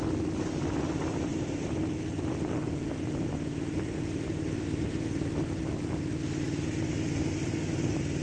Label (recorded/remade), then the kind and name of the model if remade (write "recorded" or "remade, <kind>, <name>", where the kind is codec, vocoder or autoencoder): recorded